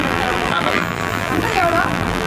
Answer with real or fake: fake